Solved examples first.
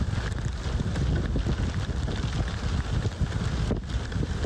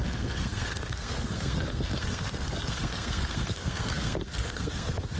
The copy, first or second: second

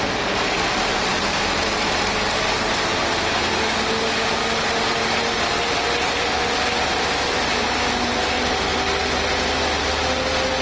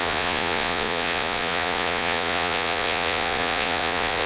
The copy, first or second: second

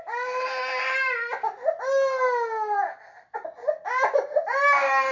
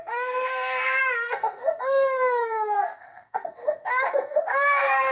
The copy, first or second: second